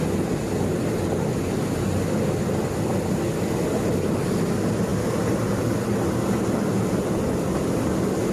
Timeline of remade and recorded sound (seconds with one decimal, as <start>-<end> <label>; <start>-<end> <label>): 0.0-8.3 recorded